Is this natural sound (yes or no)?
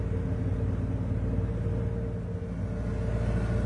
yes